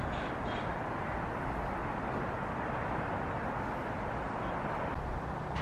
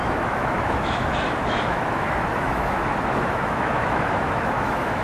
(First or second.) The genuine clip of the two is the first